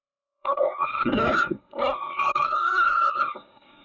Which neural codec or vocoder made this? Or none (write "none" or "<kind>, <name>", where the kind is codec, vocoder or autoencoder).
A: codec, SNAC